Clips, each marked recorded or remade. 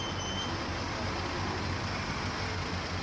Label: recorded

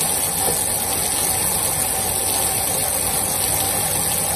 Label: recorded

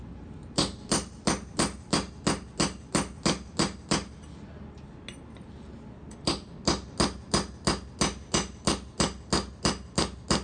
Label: recorded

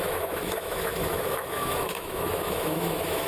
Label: remade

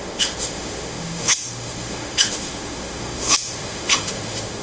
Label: remade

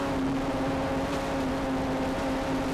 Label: recorded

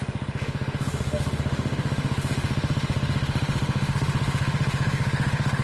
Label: remade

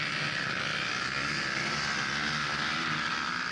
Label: recorded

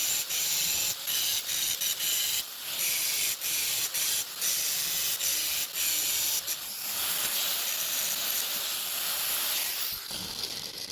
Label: recorded